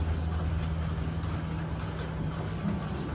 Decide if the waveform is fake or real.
real